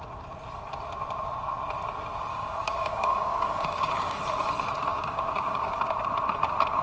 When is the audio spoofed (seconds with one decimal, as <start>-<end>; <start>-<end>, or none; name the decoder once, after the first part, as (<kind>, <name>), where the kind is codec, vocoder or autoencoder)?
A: 2.3-4.2 (codec, DAC); 4.9-5.8